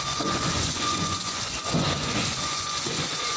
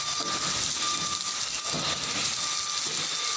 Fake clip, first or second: first